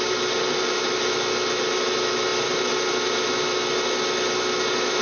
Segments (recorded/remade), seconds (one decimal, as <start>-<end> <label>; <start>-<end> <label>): 0.0-5.0 recorded